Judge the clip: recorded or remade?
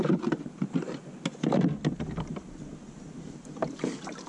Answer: recorded